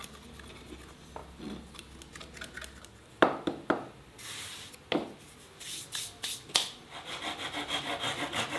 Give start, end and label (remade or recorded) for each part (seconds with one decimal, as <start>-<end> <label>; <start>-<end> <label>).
0.0-1.2 remade; 1.2-5.6 recorded; 5.6-8.6 remade